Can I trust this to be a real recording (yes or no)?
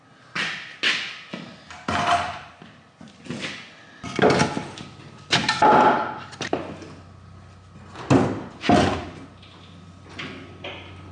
yes